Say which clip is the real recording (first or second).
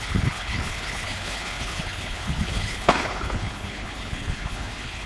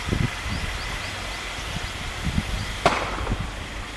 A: second